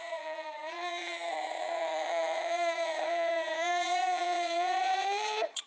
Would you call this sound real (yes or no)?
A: no